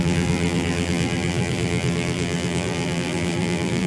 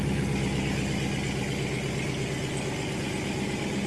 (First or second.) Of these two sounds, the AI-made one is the first